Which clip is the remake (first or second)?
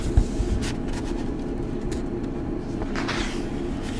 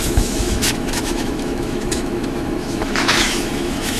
second